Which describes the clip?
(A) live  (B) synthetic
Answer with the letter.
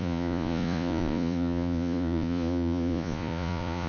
B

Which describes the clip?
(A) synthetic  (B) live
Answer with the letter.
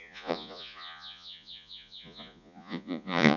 A